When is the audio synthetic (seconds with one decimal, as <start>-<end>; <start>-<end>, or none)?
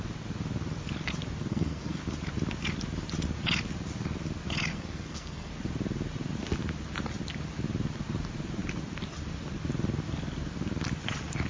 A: 1.5-2.0; 4.7-5.5